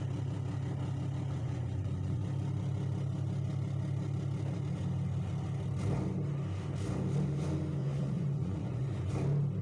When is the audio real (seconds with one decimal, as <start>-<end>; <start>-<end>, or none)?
0.0-1.4; 2.2-7.8; 9.1-9.6